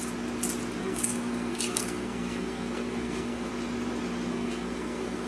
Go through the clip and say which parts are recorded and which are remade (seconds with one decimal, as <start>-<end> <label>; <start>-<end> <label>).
0.0-0.8 recorded; 0.8-3.5 remade; 3.5-4.3 recorded; 4.3-5.3 remade